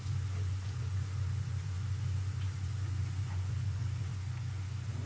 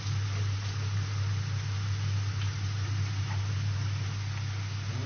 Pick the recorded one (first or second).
second